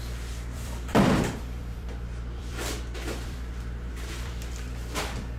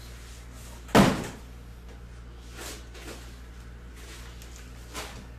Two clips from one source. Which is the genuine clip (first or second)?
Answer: second